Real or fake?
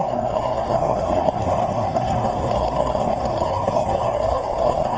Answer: fake